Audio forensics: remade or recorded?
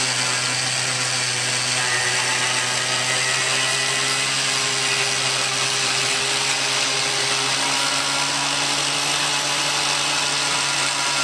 recorded